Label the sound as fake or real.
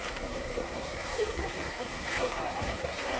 fake